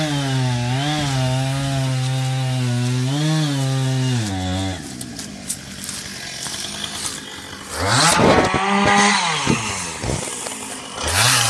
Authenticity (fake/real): real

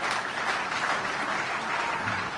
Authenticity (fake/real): real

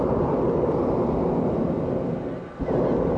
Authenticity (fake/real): real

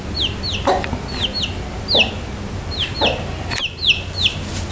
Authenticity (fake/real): real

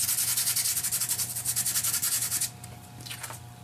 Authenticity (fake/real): real